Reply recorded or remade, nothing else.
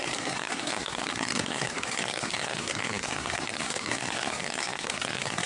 remade